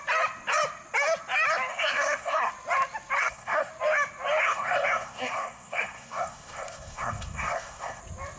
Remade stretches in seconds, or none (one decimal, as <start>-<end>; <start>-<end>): 1.7-2.5; 3.2-3.7; 4.4-8.0